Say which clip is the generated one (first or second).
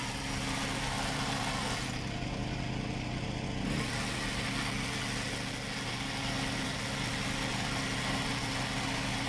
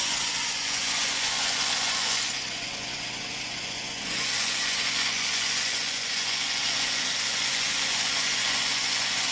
second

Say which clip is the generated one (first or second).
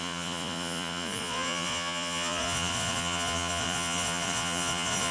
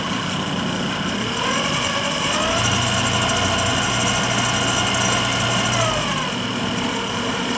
first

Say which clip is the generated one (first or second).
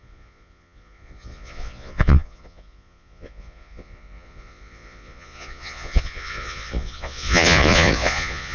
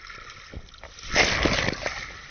first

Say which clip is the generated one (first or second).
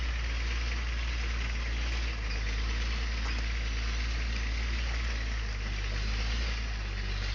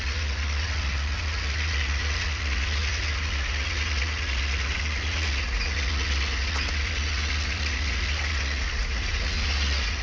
second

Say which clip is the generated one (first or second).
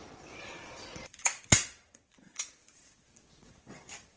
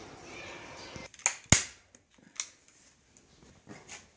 first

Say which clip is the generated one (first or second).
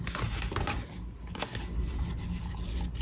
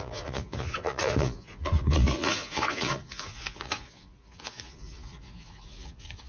second